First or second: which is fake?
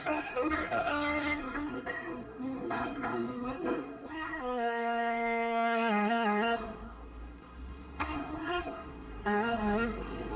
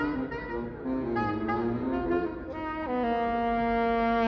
first